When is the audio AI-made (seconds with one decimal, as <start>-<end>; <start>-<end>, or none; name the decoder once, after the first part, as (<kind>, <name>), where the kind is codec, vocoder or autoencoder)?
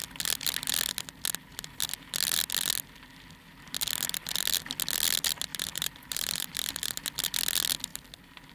5.5-7.2 (vocoder, BigVGAN v2); 7.9-8.5